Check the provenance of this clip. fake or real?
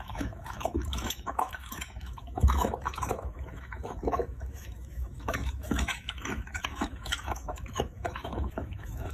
fake